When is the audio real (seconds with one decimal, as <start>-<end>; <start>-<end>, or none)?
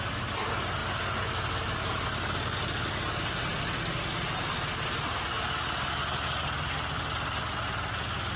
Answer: 0.0-8.4